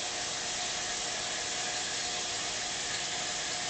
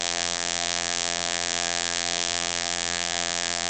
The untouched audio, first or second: first